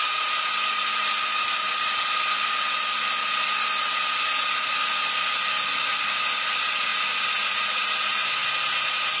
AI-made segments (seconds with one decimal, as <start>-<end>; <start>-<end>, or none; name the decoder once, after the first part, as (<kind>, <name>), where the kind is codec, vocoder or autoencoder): none